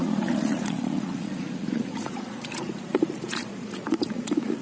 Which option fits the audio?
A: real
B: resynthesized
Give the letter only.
B